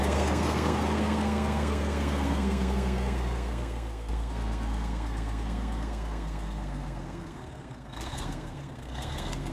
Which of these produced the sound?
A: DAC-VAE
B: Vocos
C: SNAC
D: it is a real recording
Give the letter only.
C